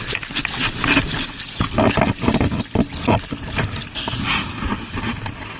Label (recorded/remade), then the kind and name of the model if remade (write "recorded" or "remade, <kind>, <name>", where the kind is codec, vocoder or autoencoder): recorded